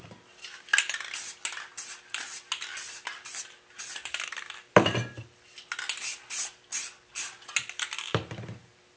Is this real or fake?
real